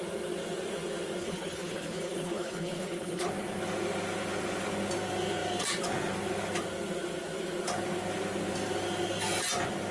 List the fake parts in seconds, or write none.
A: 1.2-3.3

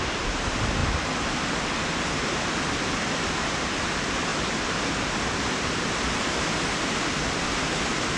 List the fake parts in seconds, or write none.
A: none

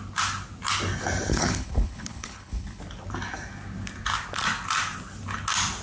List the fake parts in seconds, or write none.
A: 1.3-2.8

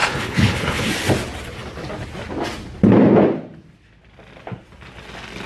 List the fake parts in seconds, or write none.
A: 0.0-0.9

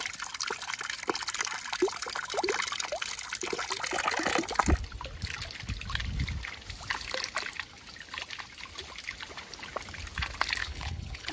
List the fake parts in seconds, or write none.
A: 10.6-11.3

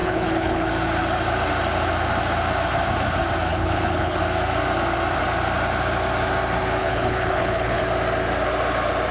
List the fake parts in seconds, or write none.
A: 0.0-0.7; 3.5-4.2; 6.8-7.8

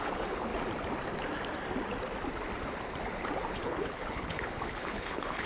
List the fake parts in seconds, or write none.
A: 0.0-0.5; 3.5-5.5